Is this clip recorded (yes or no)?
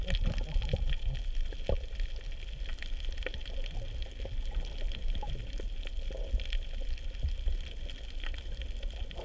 yes